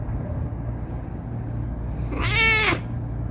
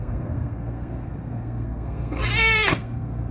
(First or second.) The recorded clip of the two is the first